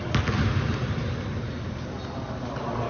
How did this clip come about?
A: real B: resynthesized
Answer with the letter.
A